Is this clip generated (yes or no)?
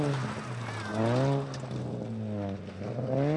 no